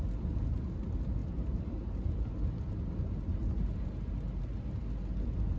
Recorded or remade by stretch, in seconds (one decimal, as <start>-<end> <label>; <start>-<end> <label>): 0.0-1.2 remade; 1.2-4.4 recorded; 4.4-5.6 remade